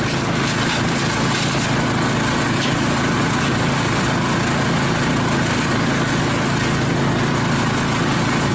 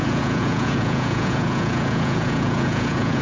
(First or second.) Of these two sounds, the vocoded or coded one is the second